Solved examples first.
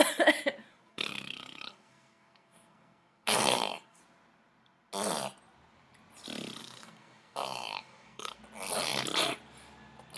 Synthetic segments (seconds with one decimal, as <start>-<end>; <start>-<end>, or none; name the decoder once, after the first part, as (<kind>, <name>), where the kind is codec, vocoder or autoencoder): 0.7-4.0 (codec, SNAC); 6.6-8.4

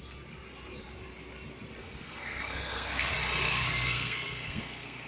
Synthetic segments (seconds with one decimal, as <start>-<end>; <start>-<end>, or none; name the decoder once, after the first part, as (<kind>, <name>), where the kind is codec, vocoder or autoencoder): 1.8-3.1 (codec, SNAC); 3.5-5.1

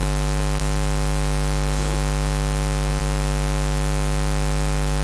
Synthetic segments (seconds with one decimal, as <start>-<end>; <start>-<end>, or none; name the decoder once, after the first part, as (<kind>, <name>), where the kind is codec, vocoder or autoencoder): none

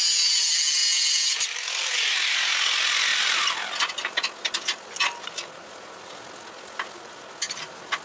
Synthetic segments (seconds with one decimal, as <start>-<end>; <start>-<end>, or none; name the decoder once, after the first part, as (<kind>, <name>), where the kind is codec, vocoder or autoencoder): none

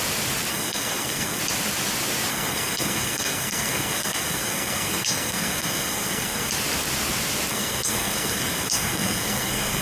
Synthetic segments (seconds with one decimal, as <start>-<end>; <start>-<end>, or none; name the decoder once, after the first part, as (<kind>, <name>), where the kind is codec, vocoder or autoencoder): 0.5-1.4 (codec, SNAC); 2.3-6.5; 7.5-9.8

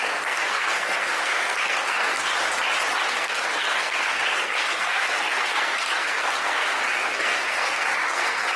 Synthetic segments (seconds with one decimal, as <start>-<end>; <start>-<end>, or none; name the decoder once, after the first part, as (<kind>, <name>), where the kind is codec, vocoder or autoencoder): 0.0-2.3 (codec, SNAC); 3.1-8.6

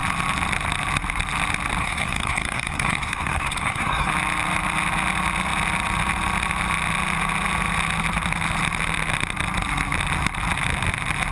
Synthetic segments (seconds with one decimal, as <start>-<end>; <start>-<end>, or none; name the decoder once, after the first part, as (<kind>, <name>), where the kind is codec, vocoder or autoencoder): 1.8-4.1 (codec, SNAC)